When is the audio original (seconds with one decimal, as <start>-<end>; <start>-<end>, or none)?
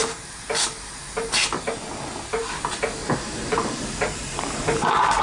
0.0-3.0